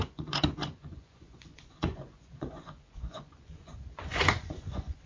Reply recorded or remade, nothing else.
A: remade